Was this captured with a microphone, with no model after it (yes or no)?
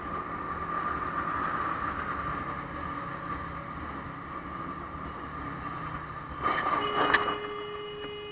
yes